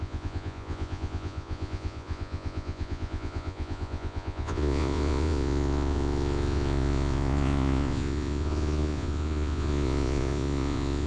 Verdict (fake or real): fake